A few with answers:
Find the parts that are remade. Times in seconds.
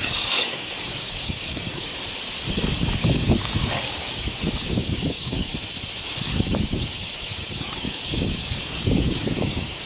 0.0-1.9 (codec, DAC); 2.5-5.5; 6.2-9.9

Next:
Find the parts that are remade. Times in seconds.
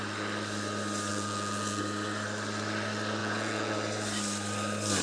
1.1-1.8 (vocoder, Vocos); 3.2-3.7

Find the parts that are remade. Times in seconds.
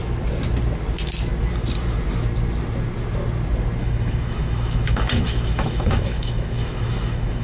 3.8-7.4 (autoencoder, DAC-VAE)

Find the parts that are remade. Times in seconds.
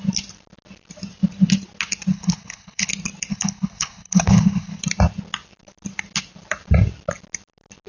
2.1-2.9 (codec, HILCodec); 3.3-4.8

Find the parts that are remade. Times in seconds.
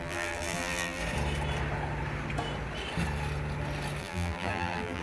0.0-1.0 (vocoder, BigVGAN v2); 4.0-5.0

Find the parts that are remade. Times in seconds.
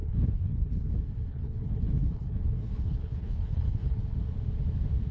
0.0-0.9 (codec, HILCodec); 1.3-4.0